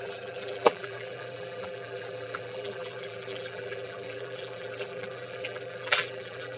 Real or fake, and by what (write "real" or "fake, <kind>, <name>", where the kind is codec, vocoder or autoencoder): fake, vocoder, BigVGAN v2